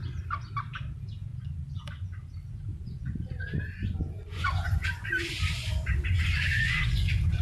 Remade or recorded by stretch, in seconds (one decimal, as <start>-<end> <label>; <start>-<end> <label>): 0.0-1.3 recorded; 1.3-2.2 remade; 2.2-2.7 recorded; 2.7-7.4 remade